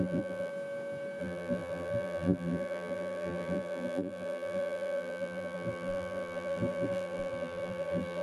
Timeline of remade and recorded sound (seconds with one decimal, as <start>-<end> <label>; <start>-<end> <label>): 0.0-0.5 remade; 0.5-1.2 recorded; 1.2-8.2 remade